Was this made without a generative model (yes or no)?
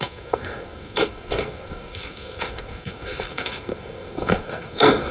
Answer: no